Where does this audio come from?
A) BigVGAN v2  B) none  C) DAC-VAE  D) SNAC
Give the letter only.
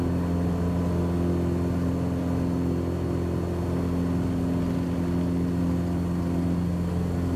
B